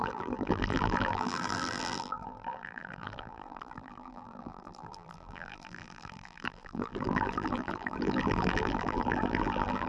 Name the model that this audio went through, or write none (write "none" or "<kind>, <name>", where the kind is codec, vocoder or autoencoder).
vocoder, BigVGAN v2